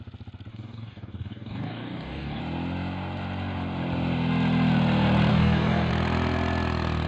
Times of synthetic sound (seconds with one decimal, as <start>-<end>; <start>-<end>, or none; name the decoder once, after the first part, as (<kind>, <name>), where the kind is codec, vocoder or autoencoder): 0.5-2.4 (codec, DAC); 5.3-5.9